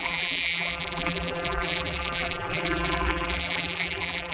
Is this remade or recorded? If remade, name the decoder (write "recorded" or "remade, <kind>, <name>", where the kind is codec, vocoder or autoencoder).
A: remade, vocoder, BigVGAN v2